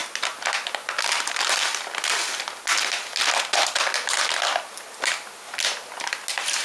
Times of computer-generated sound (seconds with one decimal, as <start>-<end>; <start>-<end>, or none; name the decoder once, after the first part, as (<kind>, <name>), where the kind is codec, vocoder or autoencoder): none